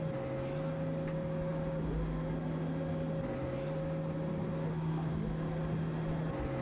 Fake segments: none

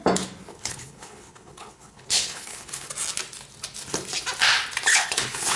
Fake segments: 0.5-2.9 (codec, HILCodec); 4.9-5.6

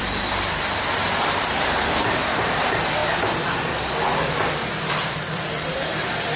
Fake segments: 0.0-3.0 (vocoder, BigVGAN v2); 4.8-6.4

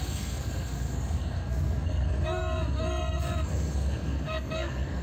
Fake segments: 0.0-5.0 (codec, SNAC)

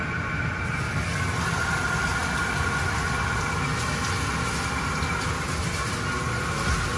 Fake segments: none

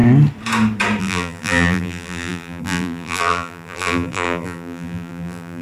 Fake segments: 1.0-5.6 (vocoder, BigVGAN v2)

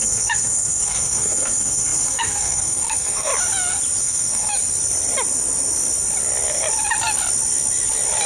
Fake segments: 0.0-3.3 (codec, SNAC); 4.0-4.6